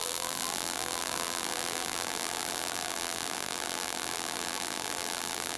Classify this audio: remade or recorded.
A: remade